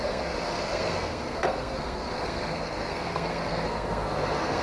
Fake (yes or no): yes